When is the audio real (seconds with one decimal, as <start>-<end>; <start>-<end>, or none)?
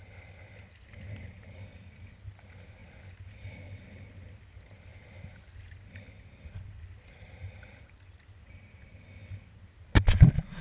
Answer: 0.0-10.6